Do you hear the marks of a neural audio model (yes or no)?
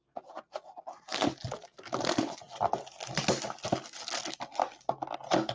no